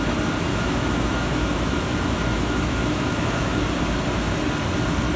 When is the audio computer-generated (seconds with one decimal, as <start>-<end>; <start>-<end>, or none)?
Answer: 0.5-3.6